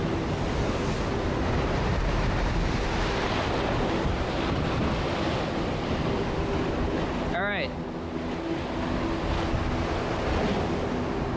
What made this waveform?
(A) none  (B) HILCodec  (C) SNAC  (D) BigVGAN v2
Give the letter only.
A